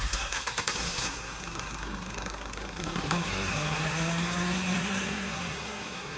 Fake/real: fake